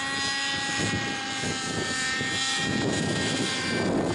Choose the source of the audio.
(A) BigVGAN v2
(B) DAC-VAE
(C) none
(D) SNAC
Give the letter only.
C